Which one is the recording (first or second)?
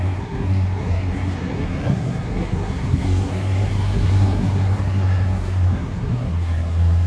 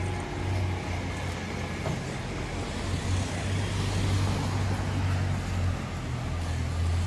second